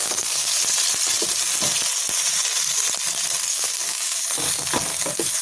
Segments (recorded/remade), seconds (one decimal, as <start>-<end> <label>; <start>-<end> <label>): 0.0-0.6 remade; 0.6-3.5 recorded; 3.5-4.5 remade; 4.5-4.9 recorded; 4.9-5.4 remade